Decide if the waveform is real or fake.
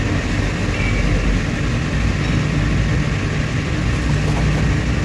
real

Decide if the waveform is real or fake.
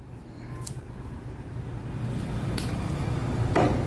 fake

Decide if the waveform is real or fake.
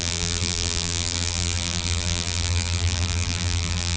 fake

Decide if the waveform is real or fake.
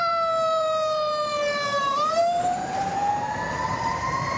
fake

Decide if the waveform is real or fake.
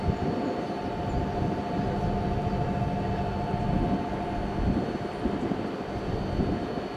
real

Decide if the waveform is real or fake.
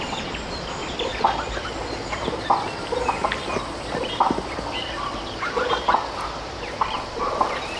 fake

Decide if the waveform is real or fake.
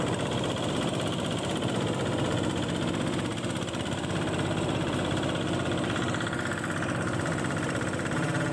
fake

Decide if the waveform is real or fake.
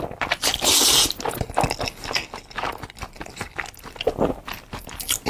real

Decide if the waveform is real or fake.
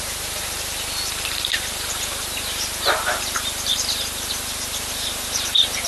fake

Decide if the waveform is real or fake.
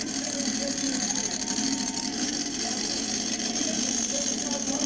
fake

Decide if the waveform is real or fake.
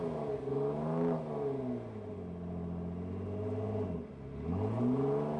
real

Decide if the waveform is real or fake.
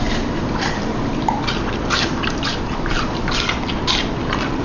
fake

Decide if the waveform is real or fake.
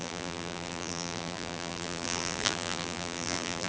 fake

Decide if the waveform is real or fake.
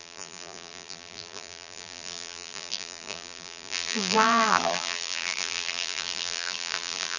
fake